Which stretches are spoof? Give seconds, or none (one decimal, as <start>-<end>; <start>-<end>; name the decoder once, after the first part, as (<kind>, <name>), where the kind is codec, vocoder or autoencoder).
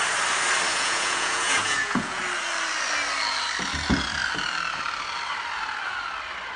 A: 0.7-2.2 (vocoder, Vocos)